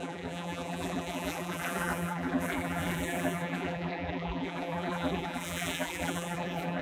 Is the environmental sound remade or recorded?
remade